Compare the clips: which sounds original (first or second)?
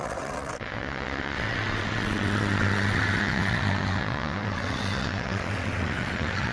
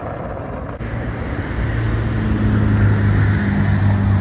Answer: second